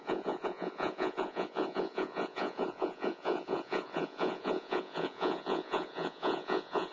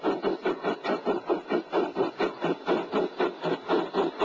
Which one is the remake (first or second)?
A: first